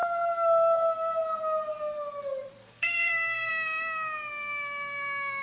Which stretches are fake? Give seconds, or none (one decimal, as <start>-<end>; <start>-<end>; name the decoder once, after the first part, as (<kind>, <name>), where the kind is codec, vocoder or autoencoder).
2.6-3.5 (codec, SNAC)